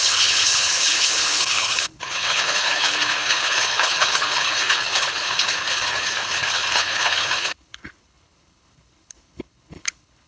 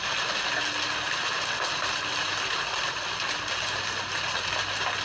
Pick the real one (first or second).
second